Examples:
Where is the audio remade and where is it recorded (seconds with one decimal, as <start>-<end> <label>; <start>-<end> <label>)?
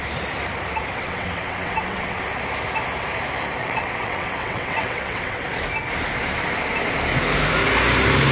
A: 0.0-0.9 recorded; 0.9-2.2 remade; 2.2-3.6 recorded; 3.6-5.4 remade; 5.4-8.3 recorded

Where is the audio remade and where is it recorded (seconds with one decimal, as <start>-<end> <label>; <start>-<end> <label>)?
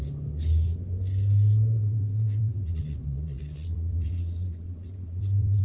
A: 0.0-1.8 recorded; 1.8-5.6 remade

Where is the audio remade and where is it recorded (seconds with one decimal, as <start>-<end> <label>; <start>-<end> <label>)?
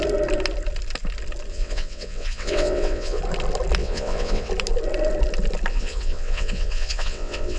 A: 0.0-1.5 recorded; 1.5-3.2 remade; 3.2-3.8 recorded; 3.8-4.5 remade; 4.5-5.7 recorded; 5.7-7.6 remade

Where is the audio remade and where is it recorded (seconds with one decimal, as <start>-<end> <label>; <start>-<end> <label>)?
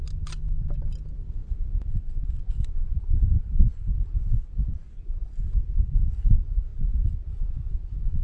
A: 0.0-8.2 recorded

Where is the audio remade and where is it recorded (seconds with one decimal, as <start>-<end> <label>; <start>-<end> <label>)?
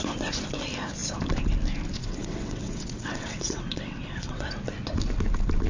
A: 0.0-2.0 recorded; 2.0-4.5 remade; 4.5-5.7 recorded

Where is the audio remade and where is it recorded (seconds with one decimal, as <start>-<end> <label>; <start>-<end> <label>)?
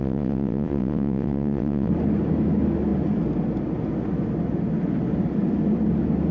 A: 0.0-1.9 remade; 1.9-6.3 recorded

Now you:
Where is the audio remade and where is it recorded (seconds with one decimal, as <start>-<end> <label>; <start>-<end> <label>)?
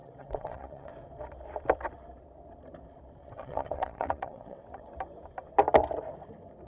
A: 0.0-0.9 remade; 0.9-3.2 recorded; 3.2-4.9 remade; 4.9-6.7 recorded